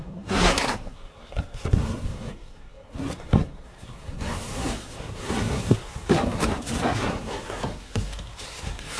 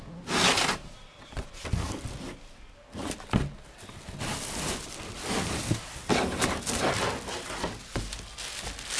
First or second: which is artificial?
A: first